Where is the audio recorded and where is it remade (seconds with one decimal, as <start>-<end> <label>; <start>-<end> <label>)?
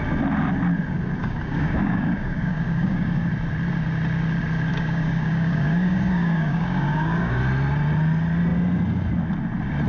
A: 0.0-1.2 recorded; 1.2-3.3 remade; 3.3-4.7 recorded; 4.7-7.4 remade; 7.4-9.9 recorded